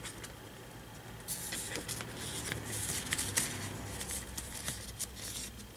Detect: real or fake real